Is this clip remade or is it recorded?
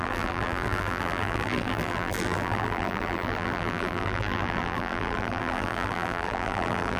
remade